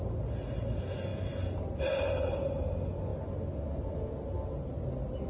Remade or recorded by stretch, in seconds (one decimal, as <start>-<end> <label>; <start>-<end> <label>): 0.0-5.3 recorded